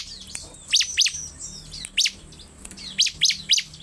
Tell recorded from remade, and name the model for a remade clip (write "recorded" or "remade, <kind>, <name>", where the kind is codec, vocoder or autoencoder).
recorded